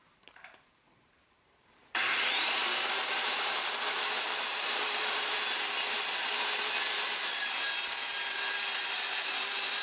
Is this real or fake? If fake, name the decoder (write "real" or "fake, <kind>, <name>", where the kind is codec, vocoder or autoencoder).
fake, vocoder, BigVGAN v2